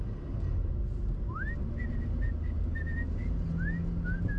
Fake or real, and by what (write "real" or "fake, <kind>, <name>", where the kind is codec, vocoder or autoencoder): real